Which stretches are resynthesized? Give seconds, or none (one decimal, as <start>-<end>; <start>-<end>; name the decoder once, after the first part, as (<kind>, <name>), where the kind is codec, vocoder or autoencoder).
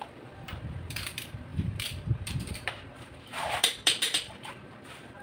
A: 0.0-5.2 (vocoder, BigVGAN v2)